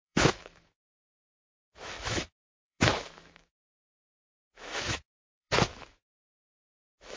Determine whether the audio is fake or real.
fake